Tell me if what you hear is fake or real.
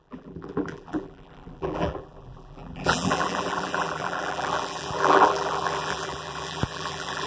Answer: fake